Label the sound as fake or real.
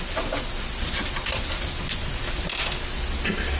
real